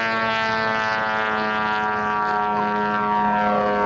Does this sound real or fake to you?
real